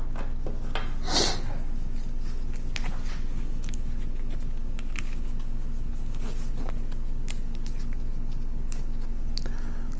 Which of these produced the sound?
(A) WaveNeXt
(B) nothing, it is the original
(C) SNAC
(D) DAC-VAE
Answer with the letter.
B